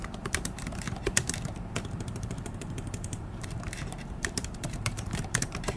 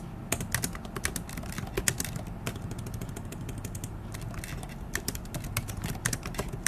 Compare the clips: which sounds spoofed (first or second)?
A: first